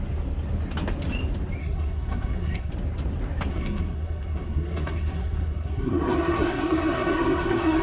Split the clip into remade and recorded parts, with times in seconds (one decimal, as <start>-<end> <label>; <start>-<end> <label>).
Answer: 0.0-1.6 recorded; 1.6-2.7 remade; 2.7-3.5 recorded; 3.5-7.8 remade